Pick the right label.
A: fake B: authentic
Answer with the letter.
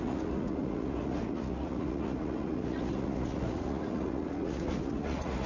A